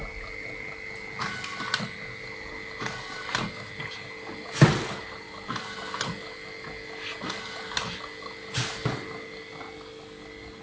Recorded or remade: recorded